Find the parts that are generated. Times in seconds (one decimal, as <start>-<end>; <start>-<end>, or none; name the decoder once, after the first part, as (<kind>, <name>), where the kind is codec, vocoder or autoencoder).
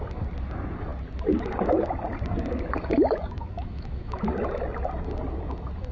3.4-4.2 (autoencoder, DAC-VAE)